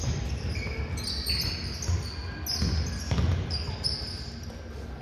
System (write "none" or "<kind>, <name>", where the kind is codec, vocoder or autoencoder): none